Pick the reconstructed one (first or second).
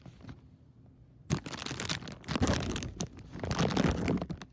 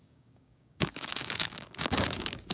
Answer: second